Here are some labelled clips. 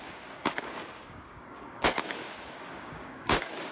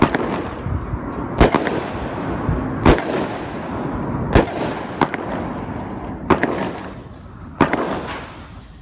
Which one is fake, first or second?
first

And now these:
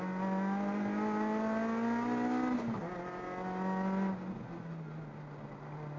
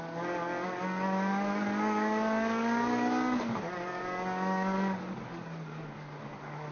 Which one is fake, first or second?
second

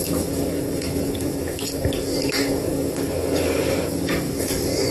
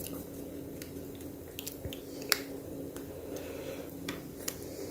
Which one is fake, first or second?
first